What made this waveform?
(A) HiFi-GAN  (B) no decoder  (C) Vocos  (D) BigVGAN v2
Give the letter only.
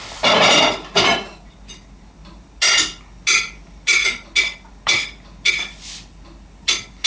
B